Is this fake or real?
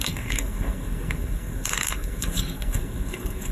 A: fake